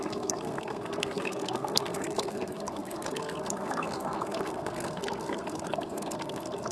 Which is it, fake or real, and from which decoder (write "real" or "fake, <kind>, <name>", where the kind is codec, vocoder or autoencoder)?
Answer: fake, codec, SNAC